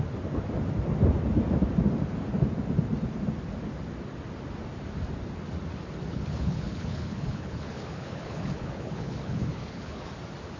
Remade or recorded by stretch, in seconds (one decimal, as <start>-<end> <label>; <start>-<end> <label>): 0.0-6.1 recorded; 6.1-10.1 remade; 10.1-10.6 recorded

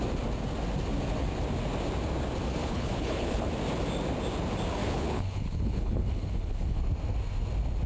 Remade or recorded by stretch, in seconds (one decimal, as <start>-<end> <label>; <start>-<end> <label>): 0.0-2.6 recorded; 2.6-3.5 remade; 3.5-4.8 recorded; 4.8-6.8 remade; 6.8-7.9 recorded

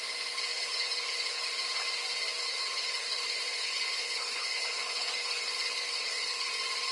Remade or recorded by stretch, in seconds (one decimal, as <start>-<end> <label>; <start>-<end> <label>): 0.0-0.5 recorded; 0.5-1.5 remade; 1.5-2.4 recorded; 2.4-6.5 remade; 6.5-6.9 recorded

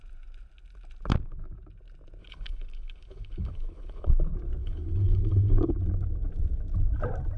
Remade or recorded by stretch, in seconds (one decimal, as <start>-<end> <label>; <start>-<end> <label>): 0.0-2.2 recorded; 2.2-4.1 remade; 4.1-4.6 recorded; 4.6-5.7 remade; 5.7-7.4 recorded

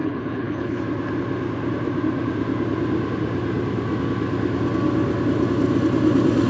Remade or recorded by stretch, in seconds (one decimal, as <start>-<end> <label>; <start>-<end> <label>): 0.0-0.8 remade; 0.8-6.5 recorded

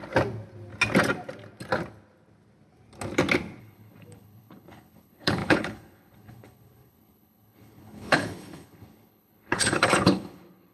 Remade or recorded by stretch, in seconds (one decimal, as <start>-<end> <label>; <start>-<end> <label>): 0.0-3.6 recorded; 3.6-10.7 remade